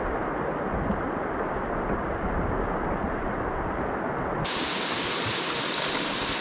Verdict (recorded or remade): recorded